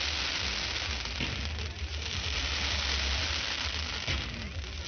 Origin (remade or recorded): recorded